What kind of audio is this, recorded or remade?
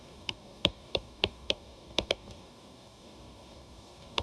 remade